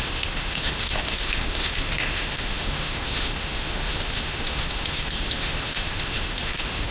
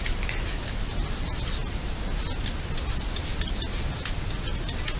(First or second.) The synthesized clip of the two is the first